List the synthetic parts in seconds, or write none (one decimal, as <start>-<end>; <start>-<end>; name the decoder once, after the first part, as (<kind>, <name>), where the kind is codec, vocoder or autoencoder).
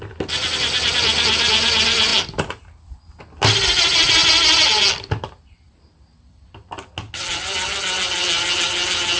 none